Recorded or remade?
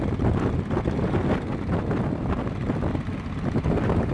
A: recorded